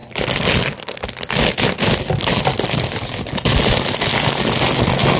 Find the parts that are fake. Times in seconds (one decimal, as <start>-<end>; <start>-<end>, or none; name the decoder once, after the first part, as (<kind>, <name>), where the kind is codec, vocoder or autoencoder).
none